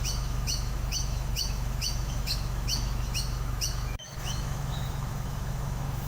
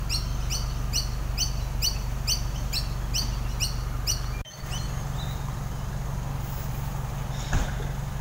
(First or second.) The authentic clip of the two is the second